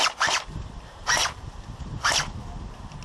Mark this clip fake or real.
fake